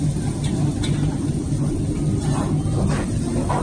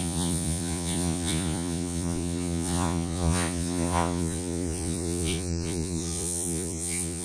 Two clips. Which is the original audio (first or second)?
first